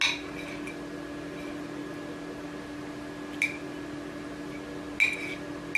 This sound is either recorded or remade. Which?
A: recorded